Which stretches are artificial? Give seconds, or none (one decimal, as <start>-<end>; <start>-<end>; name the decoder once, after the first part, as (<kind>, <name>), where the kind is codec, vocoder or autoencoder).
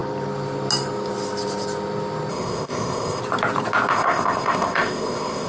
2.3-3.2 (codec, ZipCodec); 3.9-5.5